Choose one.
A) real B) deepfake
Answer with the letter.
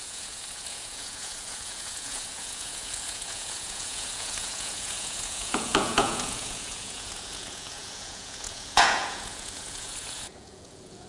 B